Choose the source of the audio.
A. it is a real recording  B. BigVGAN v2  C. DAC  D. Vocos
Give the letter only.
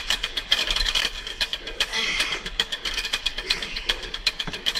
C